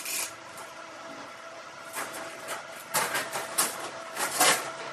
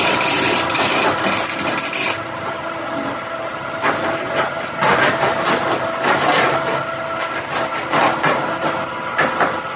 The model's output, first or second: first